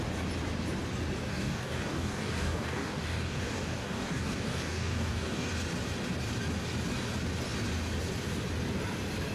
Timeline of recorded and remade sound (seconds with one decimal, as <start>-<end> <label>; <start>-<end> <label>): 0.0-1.3 recorded; 1.3-5.5 remade; 5.5-9.3 recorded